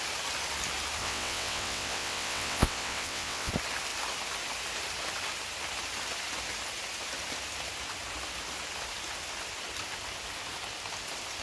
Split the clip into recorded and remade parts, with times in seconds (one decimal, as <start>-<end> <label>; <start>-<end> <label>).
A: 0.0-1.0 recorded; 1.0-3.5 remade; 3.5-11.4 recorded